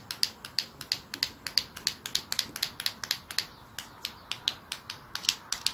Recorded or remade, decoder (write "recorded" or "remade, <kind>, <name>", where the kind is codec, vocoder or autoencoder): recorded